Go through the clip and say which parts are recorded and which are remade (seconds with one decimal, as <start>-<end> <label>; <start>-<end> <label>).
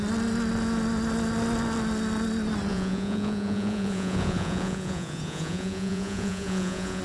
0.0-2.7 recorded; 2.7-7.0 remade